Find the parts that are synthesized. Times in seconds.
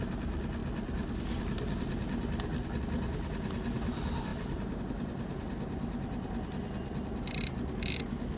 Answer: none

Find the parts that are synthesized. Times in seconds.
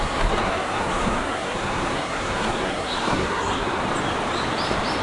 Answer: 0.0-3.8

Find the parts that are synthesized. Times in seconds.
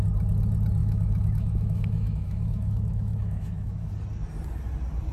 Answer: 0.8-3.9